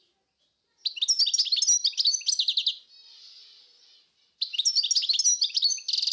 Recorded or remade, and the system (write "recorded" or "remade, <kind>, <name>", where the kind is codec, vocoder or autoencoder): recorded